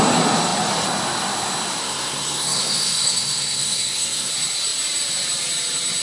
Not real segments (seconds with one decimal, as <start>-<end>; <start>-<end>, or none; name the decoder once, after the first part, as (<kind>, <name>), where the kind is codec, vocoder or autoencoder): 1.8-4.3 (codec, SNAC)